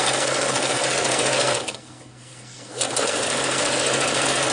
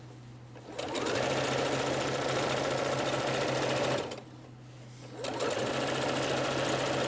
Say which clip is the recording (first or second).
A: second